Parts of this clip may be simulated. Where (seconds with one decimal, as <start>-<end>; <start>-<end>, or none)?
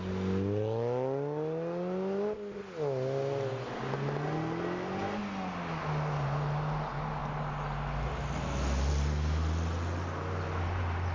none